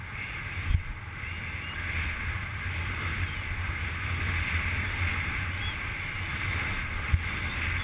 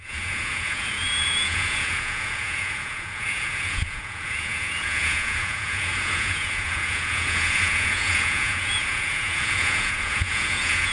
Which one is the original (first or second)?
first